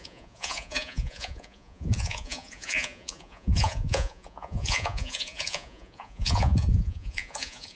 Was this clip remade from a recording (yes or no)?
yes